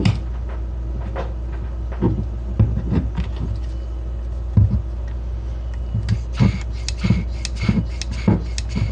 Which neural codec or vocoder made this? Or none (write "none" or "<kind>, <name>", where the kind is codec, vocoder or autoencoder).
none